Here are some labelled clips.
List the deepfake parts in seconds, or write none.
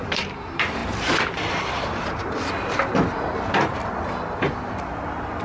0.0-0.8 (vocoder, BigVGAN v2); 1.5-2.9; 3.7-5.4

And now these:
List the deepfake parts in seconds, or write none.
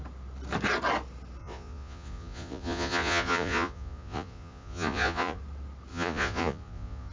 1.4-5.4 (vocoder, Vocos); 5.9-7.1